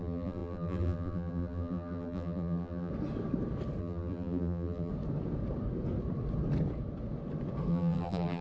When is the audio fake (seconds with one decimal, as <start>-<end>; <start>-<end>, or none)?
0.0-2.9; 3.8-4.9; 7.7-8.4